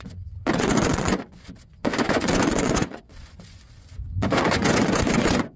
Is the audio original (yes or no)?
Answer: no